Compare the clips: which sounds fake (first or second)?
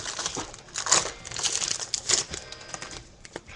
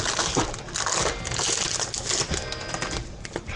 first